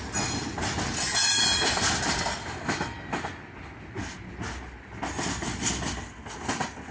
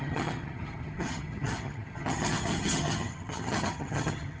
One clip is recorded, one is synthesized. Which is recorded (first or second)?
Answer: first